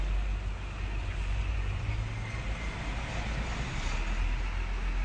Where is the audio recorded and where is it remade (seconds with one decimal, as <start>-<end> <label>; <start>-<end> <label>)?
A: 0.0-1.0 recorded; 1.0-1.9 remade; 1.9-5.0 recorded